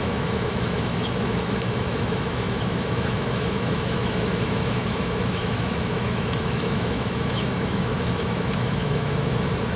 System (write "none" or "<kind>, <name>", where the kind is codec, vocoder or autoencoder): autoencoder, DAC-VAE